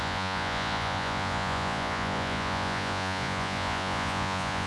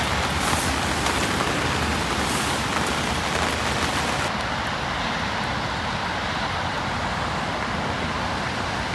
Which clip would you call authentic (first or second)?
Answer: second